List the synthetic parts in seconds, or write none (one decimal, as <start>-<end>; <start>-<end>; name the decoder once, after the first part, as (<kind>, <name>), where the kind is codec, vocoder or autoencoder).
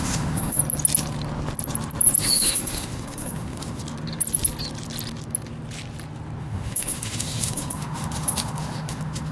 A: 0.0-0.6 (autoencoder, DAC-VAE); 2.2-3.8; 6.4-9.3